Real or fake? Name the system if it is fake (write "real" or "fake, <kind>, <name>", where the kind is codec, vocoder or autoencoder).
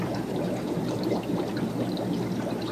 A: real